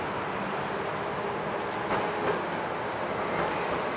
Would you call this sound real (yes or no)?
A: yes